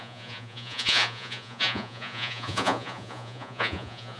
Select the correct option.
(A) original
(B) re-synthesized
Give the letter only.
B